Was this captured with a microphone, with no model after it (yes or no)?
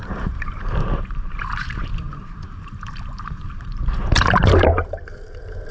no